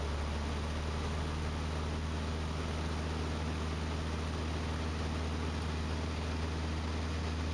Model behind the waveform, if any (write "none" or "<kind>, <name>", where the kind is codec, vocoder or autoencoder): none